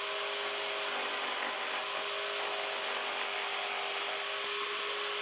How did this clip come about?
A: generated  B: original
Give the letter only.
B